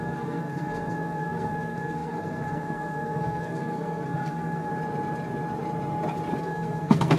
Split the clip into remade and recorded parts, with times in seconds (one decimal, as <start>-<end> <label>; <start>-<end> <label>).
0.0-4.7 remade; 4.7-6.4 recorded; 6.4-7.2 remade